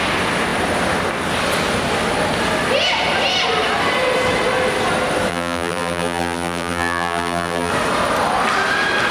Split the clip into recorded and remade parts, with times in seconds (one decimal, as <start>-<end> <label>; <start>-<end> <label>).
0.0-5.3 recorded; 5.3-7.7 remade; 7.7-9.1 recorded